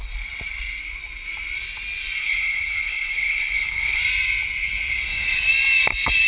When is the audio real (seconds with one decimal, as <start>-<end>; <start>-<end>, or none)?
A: 0.0-2.2; 4.0-6.3

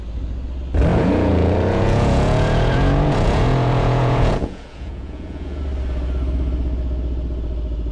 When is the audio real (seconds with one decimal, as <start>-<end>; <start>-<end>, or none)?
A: 0.0-0.9; 5.6-7.9